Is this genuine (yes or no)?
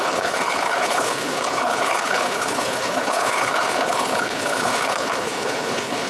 no